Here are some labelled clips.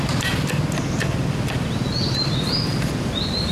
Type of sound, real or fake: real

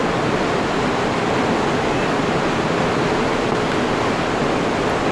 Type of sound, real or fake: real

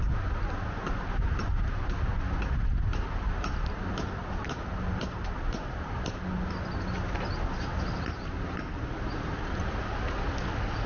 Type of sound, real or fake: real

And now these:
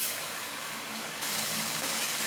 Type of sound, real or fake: fake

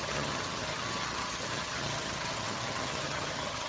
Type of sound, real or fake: fake